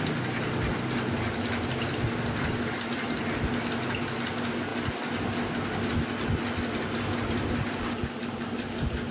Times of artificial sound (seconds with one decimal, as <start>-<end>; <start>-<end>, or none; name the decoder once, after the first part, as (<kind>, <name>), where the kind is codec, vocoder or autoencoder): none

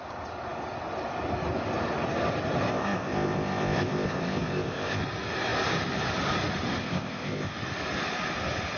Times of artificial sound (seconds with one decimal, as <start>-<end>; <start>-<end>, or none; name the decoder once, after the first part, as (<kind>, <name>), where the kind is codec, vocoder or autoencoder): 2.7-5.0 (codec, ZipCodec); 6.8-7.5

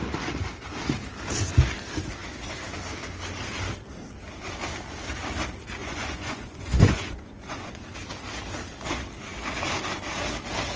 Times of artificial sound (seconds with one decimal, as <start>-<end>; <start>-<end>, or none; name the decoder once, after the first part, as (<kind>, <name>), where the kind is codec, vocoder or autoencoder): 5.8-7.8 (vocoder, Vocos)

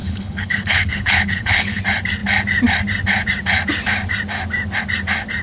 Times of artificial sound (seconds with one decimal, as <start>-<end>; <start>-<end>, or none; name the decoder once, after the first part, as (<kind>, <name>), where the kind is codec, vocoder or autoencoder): 0.0-1.8 (codec, HILCodec)

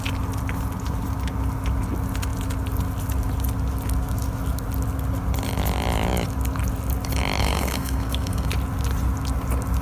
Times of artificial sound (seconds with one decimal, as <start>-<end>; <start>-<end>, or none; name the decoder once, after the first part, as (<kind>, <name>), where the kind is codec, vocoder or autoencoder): 7.4-8.5 (codec, SNAC)

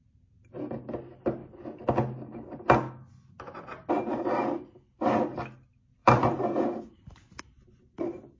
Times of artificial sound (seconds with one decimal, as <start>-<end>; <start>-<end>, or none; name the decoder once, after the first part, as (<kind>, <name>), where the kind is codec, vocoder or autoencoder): 6.0-8.4 (vocoder, BigVGAN v2)

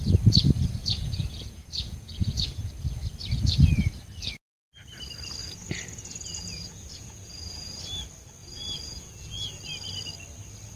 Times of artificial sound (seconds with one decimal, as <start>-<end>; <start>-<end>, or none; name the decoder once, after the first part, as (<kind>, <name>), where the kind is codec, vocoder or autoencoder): 0.8-2.7 (vocoder, Vocos); 5.4-7.8; 8.4-9.6